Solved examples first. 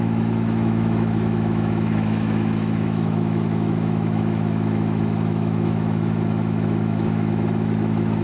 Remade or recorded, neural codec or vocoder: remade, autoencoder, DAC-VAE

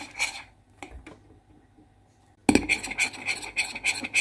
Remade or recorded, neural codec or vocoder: recorded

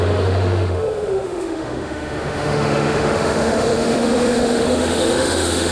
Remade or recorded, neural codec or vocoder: remade, autoencoder, DAC-VAE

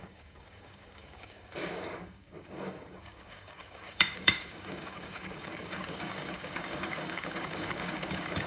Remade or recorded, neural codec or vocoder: remade, codec, DAC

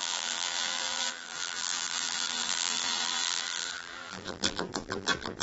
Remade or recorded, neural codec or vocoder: remade, vocoder, BigVGAN v2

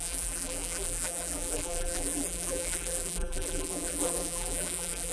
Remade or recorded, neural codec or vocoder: remade, vocoder, BigVGAN v2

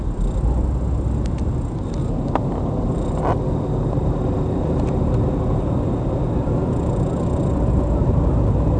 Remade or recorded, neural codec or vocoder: remade, vocoder, BigVGAN v2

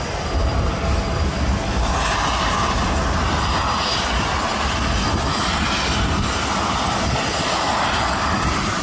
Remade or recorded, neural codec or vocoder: recorded